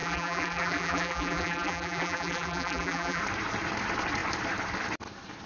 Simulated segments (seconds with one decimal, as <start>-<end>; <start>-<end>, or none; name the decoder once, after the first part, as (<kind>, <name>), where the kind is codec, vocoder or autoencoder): 0.0-3.2 (vocoder, BigVGAN v2)